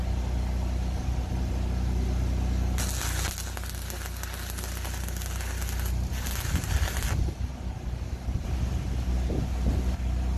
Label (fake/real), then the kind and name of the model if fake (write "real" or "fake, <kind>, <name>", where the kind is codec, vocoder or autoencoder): real